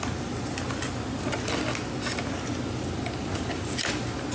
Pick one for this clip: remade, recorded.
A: recorded